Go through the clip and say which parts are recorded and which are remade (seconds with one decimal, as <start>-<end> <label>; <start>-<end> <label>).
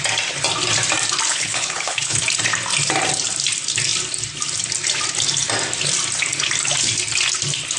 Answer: 0.0-1.3 recorded; 1.3-2.2 remade; 2.2-7.8 recorded